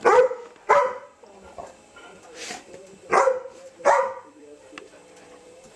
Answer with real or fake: fake